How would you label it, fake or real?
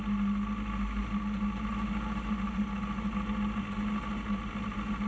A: real